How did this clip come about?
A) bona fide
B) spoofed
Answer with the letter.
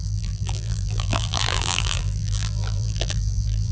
B